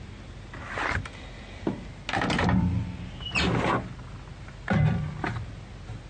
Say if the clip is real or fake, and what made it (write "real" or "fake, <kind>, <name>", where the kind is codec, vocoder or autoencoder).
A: real